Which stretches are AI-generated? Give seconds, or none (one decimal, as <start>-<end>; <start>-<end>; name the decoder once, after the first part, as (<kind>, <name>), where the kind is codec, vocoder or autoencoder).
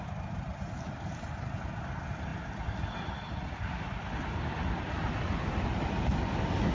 2.3-5.6 (vocoder, BigVGAN v2)